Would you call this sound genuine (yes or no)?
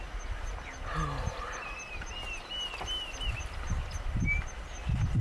yes